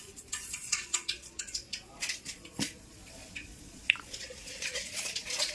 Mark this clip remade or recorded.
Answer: remade